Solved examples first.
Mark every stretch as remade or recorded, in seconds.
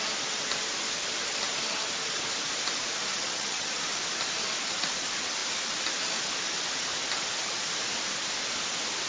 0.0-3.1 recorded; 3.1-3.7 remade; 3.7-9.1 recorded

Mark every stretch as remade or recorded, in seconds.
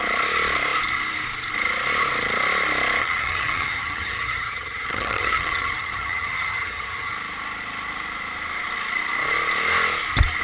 0.0-3.0 recorded; 3.0-7.1 remade; 7.1-10.4 recorded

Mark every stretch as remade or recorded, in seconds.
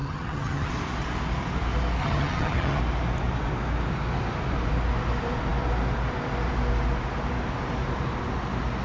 0.0-0.7 remade; 0.7-2.0 recorded; 2.0-2.8 remade; 2.8-8.8 recorded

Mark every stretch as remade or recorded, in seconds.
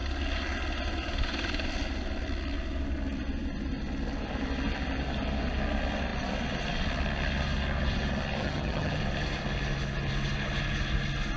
0.0-8.4 recorded; 8.4-9.0 remade; 9.0-11.4 recorded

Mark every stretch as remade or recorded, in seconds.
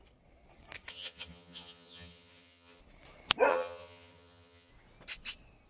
0.0-0.9 recorded; 0.9-2.8 remade; 2.8-3.5 recorded; 3.5-4.7 remade; 4.7-5.7 recorded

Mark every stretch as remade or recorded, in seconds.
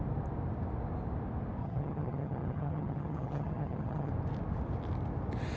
0.0-1.6 recorded; 1.6-4.1 remade; 4.1-5.6 recorded